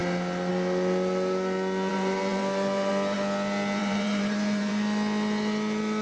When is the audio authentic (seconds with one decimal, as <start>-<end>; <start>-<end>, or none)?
0.0-1.9; 2.9-3.8; 4.7-6.0